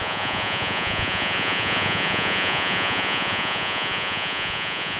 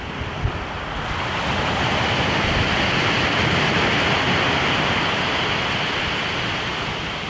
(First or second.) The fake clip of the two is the first